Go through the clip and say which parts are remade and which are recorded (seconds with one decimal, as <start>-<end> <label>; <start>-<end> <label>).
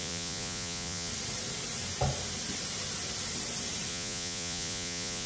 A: 0.0-1.1 remade; 1.1-3.9 recorded; 3.9-5.3 remade